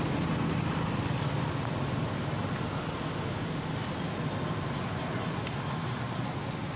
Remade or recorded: recorded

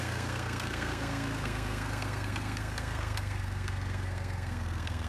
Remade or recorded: remade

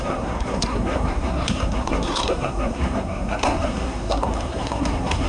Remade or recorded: remade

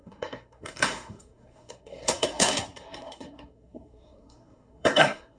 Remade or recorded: remade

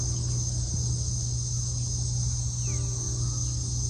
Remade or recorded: recorded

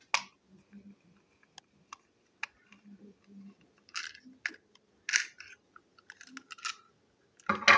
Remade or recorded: recorded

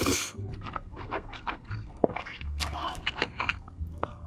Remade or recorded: remade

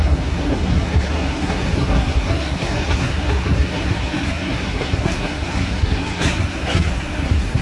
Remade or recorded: remade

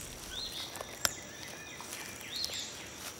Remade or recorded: recorded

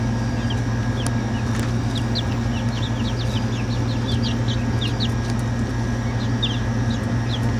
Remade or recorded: recorded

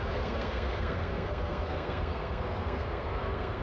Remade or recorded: remade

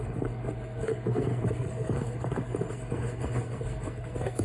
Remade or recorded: remade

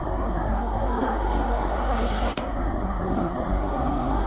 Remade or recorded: remade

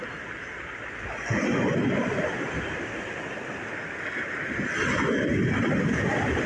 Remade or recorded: recorded